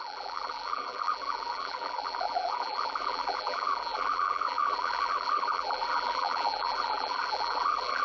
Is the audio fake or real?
fake